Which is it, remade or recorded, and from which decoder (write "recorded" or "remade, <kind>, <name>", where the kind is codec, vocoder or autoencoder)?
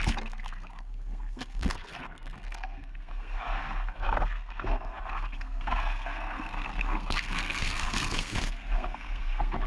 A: remade, codec, SNAC